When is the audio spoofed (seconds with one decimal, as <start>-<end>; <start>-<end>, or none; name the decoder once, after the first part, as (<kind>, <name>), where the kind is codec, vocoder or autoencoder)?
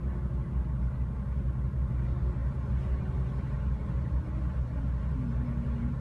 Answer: none